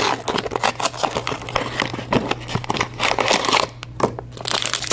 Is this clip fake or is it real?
real